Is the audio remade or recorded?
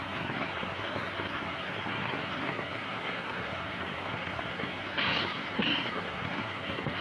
remade